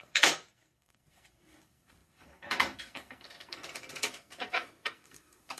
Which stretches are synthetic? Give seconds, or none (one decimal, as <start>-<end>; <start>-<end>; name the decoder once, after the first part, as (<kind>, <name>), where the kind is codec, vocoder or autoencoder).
0.0-5.6 (codec, SNAC)